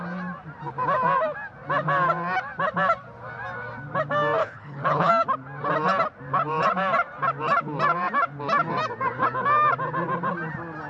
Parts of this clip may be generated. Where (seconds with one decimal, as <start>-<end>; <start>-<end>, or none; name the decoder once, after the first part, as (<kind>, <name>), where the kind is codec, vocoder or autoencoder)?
4.4-5.1 (codec, HILCodec)